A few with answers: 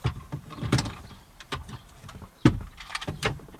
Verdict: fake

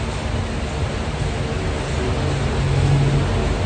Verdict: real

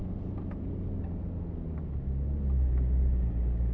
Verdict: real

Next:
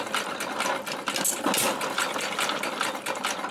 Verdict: real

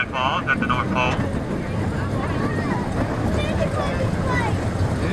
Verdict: real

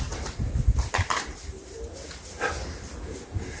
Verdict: real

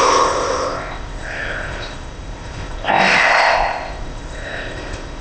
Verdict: fake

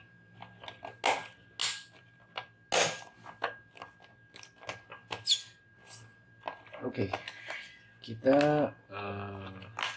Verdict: real